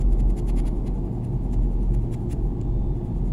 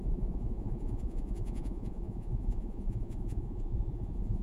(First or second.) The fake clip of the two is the second